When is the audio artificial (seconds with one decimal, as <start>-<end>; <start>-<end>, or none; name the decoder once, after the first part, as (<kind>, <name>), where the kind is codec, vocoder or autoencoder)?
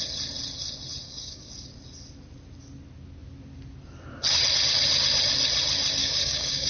1.0-1.5 (codec, DAC); 6.0-6.7